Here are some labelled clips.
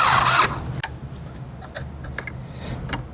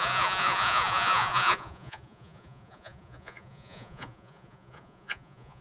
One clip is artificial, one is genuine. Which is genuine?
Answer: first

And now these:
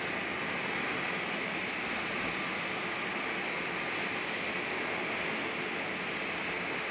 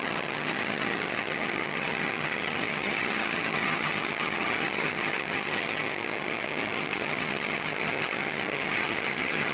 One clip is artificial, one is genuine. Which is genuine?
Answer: first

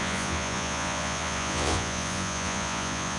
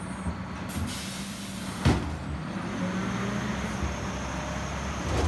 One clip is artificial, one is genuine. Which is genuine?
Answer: second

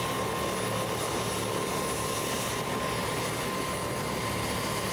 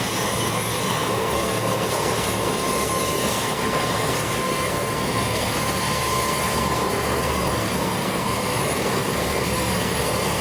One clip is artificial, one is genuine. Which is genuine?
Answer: first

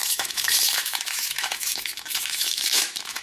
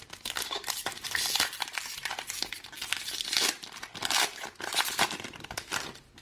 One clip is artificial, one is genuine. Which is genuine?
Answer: second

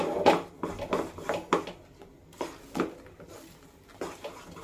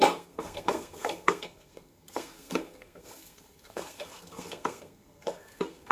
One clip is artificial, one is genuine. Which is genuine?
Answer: first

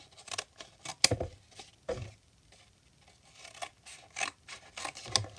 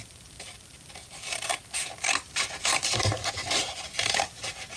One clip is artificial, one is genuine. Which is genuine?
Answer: first